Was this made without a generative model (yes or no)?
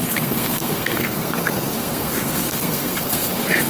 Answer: no